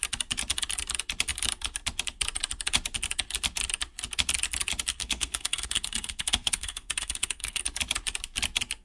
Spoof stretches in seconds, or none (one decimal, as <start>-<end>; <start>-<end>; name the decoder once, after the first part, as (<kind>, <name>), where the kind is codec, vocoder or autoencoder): 4.9-7.6 (codec, SNAC)